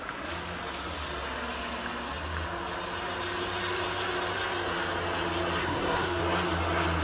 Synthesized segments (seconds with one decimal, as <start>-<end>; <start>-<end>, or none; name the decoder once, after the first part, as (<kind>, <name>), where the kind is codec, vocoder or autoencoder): 5.6-6.2 (codec, SNAC)